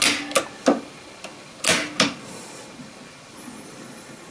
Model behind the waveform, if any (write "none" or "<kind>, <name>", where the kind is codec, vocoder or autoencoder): none